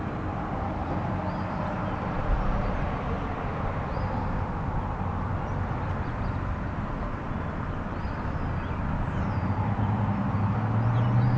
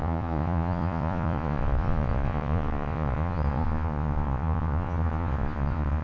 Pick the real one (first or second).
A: first